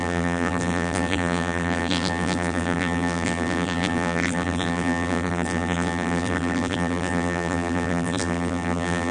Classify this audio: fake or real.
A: fake